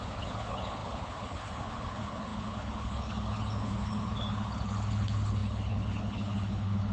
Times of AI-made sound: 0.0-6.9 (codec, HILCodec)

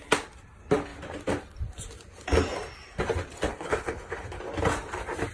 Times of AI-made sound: 3.5-4.4 (codec, HILCodec)

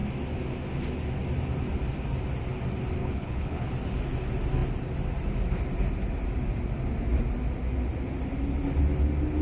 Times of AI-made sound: 3.0-3.7 (codec, HILCodec)

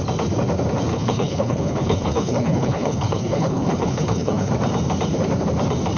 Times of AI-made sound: 0.9-4.5 (codec, HILCodec)

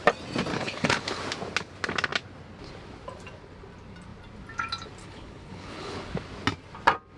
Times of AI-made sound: 0.5-1.2 (codec, HILCodec); 5.0-6.1

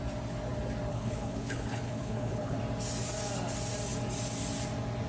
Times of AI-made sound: 0.9-2.6 (codec, HILCodec)

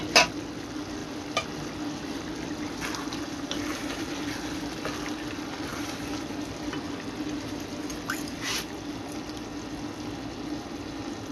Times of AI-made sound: none